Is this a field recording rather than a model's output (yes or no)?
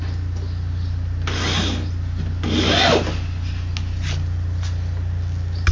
yes